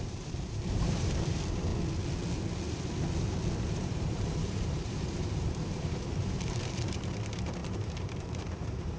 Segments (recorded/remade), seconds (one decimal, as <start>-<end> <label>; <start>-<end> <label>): 0.0-1.7 remade; 1.7-3.6 recorded; 3.6-9.0 remade